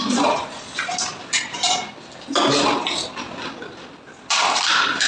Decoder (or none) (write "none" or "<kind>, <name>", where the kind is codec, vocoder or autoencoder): none